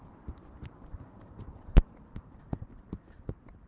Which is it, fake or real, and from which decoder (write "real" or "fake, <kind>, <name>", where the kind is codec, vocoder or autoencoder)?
real